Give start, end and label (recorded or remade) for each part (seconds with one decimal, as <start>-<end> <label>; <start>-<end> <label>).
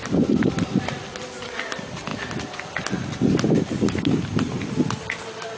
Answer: 0.0-5.6 recorded